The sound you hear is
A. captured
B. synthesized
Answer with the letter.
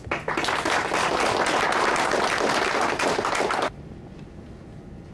A